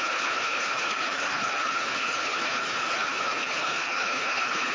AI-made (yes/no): yes